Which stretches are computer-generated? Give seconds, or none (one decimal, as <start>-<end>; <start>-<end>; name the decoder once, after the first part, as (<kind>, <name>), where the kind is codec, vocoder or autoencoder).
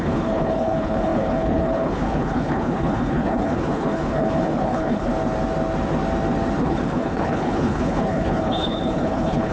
0.0-5.1 (codec, HILCodec); 6.6-9.5